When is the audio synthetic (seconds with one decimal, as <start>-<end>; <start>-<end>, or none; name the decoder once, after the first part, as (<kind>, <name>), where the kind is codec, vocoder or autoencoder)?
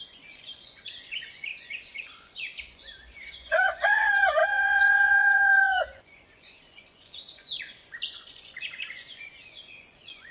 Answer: 0.0-10.3 (vocoder, Vocos)